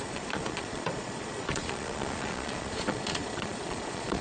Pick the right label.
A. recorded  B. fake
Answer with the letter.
B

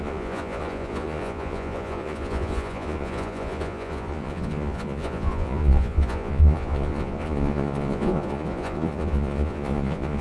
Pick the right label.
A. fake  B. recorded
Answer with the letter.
A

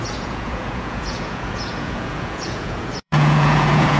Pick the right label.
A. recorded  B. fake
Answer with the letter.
B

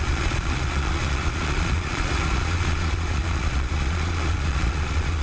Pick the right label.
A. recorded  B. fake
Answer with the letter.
B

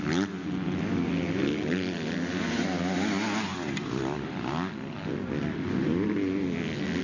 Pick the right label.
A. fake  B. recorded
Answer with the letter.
B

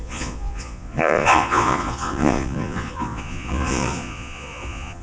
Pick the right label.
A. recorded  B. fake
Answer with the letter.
B